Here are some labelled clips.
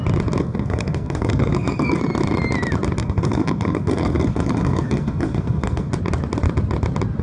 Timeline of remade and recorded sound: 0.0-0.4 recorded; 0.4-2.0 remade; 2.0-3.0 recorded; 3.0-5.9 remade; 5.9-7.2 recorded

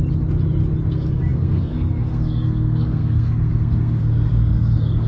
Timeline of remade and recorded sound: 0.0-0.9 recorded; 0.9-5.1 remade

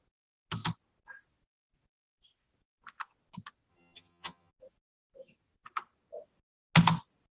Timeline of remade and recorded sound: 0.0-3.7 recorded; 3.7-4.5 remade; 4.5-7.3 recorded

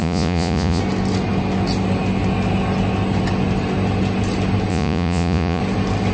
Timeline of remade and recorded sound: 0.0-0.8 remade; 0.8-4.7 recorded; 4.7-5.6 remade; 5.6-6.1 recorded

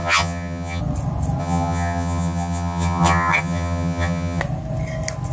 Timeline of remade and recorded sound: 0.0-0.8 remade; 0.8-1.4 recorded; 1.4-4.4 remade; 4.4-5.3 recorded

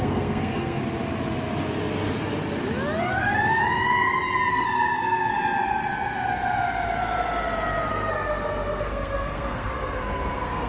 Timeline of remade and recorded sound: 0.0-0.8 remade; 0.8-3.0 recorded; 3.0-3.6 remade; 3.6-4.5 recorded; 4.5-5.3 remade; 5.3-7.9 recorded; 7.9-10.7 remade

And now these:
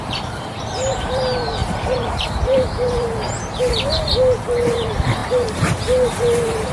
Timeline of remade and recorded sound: 0.0-6.7 remade

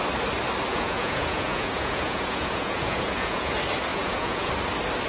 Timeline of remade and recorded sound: 0.0-0.7 recorded; 0.7-3.5 remade; 3.5-3.9 recorded; 3.9-4.5 remade; 4.5-5.1 recorded